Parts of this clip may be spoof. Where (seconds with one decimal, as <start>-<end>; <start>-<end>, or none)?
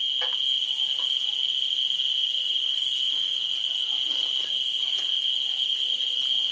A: 2.1-3.5